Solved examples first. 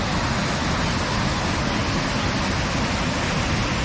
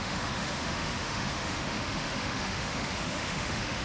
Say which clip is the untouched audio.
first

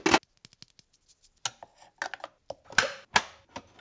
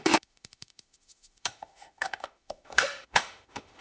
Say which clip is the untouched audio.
first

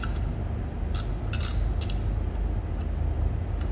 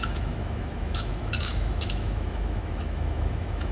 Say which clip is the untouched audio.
first